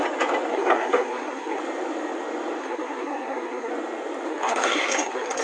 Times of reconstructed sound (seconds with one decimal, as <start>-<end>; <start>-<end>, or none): 0.5-1.6; 2.6-3.7; 4.3-5.4